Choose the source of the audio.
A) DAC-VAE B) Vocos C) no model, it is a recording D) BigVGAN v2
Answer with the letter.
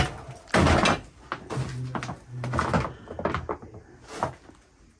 C